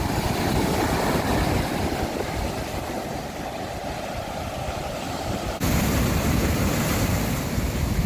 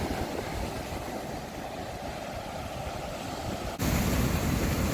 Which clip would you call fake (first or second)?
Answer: first